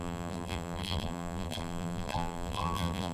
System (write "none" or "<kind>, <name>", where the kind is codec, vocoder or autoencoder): vocoder, BigVGAN v2